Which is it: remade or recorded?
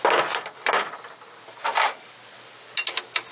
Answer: recorded